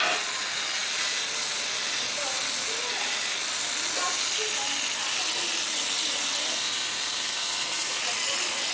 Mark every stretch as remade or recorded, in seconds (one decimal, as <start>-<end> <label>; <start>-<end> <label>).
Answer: 0.0-6.5 recorded; 6.5-8.0 remade; 8.0-8.7 recorded